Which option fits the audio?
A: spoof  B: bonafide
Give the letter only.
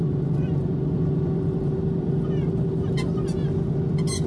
B